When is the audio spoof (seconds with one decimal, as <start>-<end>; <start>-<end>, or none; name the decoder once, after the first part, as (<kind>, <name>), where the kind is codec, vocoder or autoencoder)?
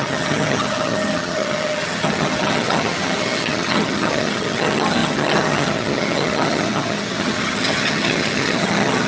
0.0-9.1 (vocoder, HiFi-GAN)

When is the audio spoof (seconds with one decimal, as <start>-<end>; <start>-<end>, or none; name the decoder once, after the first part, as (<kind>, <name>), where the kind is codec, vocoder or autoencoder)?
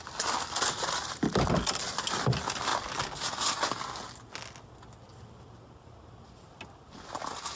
none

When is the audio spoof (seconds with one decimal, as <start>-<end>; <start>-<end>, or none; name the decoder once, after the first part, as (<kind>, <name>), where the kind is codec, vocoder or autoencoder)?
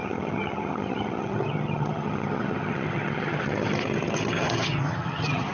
0.0-5.5 (vocoder, HiFi-GAN)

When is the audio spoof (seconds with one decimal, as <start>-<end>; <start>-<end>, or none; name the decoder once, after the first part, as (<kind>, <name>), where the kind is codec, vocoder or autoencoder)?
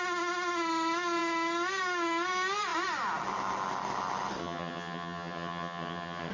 4.4-6.3 (vocoder, HiFi-GAN)